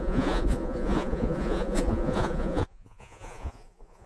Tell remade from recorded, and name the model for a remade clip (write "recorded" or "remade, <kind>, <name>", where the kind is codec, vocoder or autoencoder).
remade, vocoder, Vocos